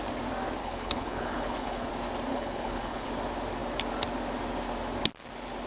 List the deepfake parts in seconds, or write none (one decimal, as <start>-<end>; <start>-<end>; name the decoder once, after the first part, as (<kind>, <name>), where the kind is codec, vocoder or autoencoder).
0.6-1.9 (codec, HILCodec); 2.3-3.1